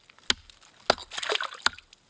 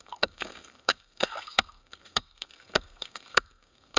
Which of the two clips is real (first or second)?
first